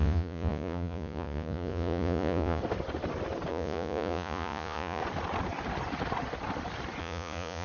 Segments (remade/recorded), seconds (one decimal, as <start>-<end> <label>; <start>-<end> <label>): 0.0-2.6 remade; 2.6-3.5 recorded; 3.5-5.0 remade; 5.0-7.0 recorded; 7.0-7.6 remade

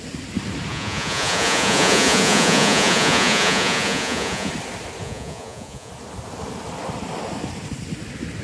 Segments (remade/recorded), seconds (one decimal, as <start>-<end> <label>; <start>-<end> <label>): 0.0-0.7 recorded; 0.7-4.5 remade; 4.5-5.0 recorded; 5.0-5.9 remade; 5.9-8.4 recorded

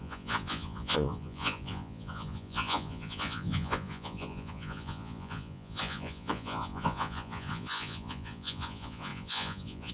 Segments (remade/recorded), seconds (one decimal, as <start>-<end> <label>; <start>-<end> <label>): 0.0-9.9 remade

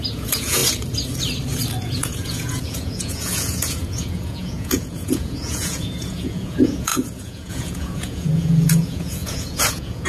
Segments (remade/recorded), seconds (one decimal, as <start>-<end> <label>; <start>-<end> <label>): 0.0-0.6 remade; 0.6-1.8 recorded; 1.8-10.1 remade

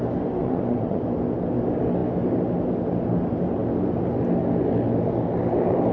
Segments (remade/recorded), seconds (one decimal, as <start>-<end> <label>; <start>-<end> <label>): 0.0-0.4 recorded; 0.4-1.0 remade; 1.0-5.9 recorded

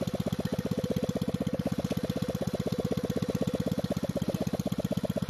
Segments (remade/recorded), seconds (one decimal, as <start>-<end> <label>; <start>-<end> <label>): 0.0-5.3 recorded

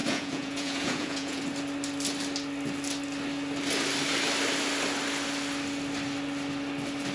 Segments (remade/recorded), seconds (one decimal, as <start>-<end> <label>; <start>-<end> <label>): 0.0-1.4 remade; 1.4-7.1 recorded

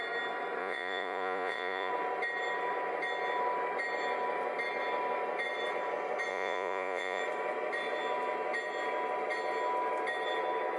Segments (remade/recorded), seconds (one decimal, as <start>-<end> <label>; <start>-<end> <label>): 0.0-0.6 recorded; 0.6-1.9 remade; 1.9-6.3 recorded; 6.3-7.2 remade; 7.2-10.8 recorded